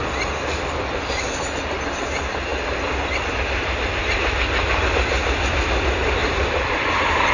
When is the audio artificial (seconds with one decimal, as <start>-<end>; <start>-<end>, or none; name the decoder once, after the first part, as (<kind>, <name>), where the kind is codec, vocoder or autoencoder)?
6.2-7.3 (vocoder, BigVGAN v2)